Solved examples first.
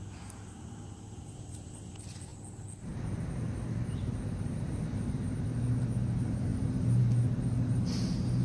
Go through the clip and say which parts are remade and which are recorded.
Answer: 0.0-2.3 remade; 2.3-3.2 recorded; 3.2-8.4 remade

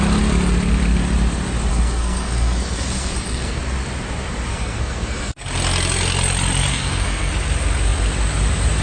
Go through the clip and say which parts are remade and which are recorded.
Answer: 0.0-1.7 recorded; 1.7-3.6 remade; 3.6-4.5 recorded; 4.5-5.5 remade; 5.5-6.7 recorded; 6.7-7.3 remade; 7.3-8.8 recorded

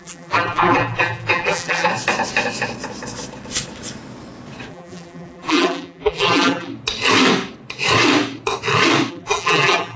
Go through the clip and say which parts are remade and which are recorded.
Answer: 0.0-1.9 remade; 1.9-4.7 recorded; 4.7-6.7 remade; 6.7-9.1 recorded; 9.1-10.0 remade

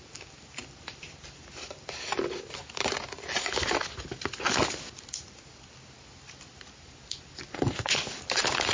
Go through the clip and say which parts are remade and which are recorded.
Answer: 0.0-8.7 recorded

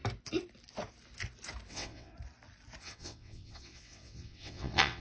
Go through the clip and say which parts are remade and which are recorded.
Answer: 0.0-1.7 recorded; 1.7-2.1 remade; 2.1-2.8 recorded; 2.8-5.0 remade

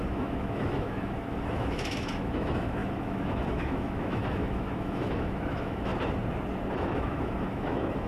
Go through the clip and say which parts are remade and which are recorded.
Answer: 0.0-5.9 remade; 5.9-6.7 recorded; 6.7-8.1 remade